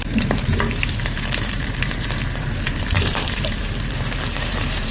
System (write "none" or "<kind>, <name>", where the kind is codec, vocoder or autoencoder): vocoder, BigVGAN v2